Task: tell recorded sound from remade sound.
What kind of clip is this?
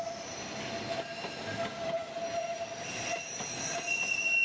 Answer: recorded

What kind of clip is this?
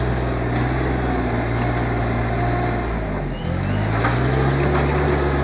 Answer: recorded